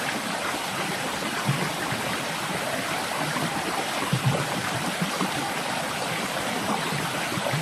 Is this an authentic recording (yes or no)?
yes